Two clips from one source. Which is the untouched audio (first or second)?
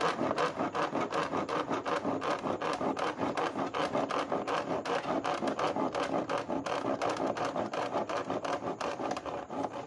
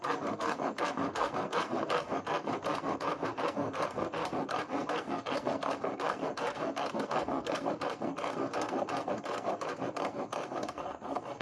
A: first